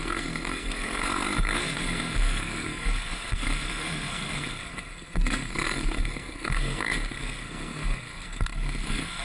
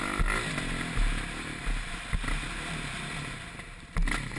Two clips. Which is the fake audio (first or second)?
first